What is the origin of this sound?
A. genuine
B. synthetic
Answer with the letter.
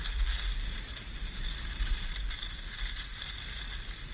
A